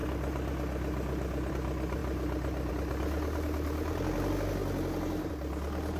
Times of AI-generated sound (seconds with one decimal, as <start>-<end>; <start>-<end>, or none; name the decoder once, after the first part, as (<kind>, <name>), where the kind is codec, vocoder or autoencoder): none